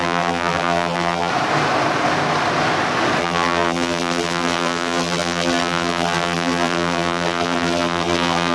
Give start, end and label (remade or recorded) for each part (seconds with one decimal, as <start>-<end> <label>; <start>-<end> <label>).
0.0-1.3 remade; 1.3-3.2 recorded; 3.2-8.5 remade